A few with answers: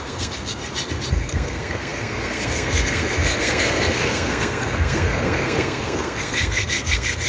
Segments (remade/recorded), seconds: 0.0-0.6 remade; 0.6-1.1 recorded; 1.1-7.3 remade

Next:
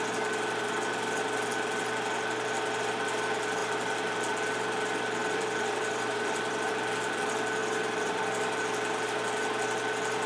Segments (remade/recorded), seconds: 0.0-5.2 recorded; 5.2-6.7 remade; 6.7-7.6 recorded; 7.6-8.6 remade; 8.6-10.3 recorded

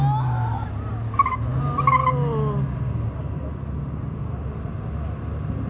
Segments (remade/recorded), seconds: 0.0-5.7 recorded

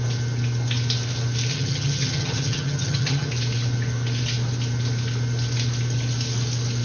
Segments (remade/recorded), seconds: 0.0-1.5 recorded; 1.5-3.3 remade; 3.3-6.8 recorded